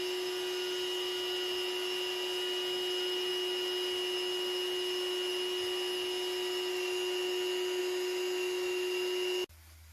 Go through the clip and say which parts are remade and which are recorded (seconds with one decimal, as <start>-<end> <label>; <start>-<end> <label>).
0.0-9.9 recorded